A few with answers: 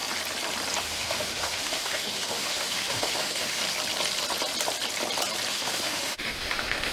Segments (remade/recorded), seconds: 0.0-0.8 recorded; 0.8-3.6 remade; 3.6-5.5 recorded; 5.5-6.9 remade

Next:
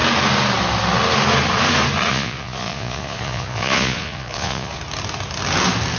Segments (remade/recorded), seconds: 0.0-2.1 recorded; 2.1-4.8 remade; 4.8-6.0 recorded

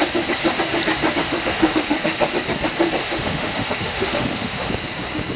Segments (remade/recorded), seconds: 0.0-1.2 recorded; 1.2-2.2 remade; 2.2-3.0 recorded; 3.0-4.7 remade; 4.7-5.4 recorded

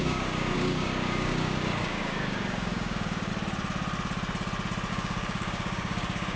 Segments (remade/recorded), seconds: 0.0-3.3 remade; 3.3-4.9 recorded; 4.9-6.4 remade

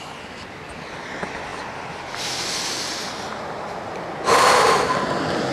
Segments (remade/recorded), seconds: 0.0-5.5 recorded

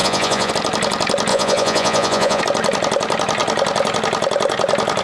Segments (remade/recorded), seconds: 0.0-0.5 remade; 0.5-1.3 recorded; 1.3-2.4 remade; 2.4-5.0 recorded

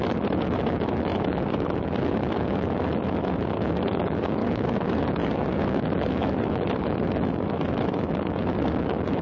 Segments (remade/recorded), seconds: 0.0-9.2 remade

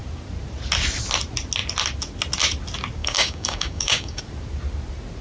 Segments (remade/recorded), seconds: 0.0-3.0 recorded; 3.0-4.2 remade; 4.2-5.2 recorded